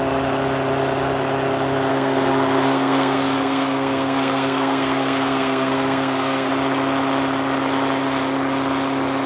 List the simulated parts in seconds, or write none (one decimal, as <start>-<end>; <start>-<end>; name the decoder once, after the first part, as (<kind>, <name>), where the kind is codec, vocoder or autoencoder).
1.9-6.5 (codec, SNAC)